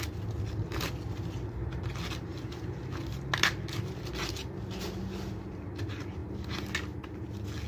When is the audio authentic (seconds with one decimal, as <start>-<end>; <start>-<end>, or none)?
0.0-7.7